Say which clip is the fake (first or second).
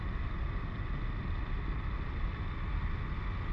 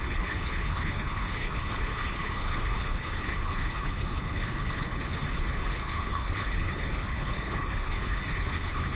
second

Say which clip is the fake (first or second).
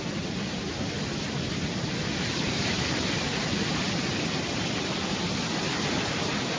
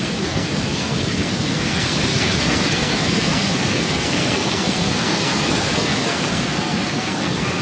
second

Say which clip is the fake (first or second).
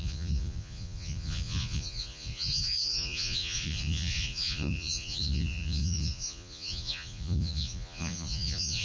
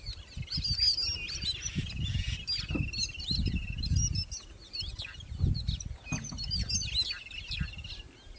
first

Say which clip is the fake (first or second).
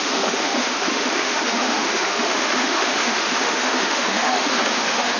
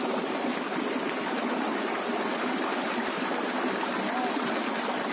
first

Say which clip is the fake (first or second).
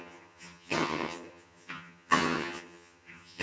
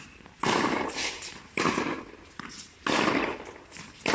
first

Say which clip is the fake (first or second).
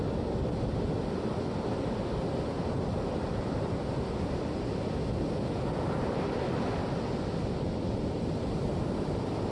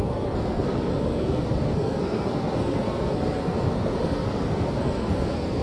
second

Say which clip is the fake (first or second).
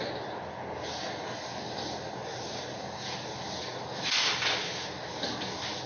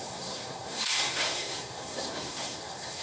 second